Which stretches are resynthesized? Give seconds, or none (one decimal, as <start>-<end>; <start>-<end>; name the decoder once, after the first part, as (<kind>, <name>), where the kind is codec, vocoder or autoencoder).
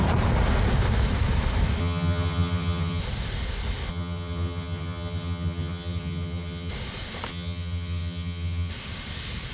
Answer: 1.8-3.0 (vocoder, HiFi-GAN); 3.9-6.7; 7.3-8.7